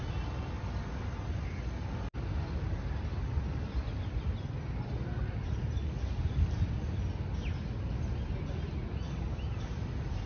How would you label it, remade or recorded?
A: recorded